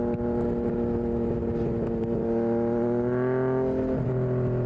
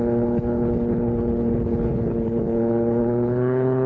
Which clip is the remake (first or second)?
second